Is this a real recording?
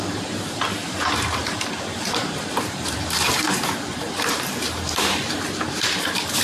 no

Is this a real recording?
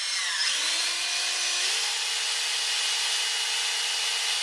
yes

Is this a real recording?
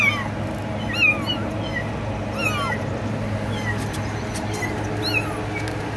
yes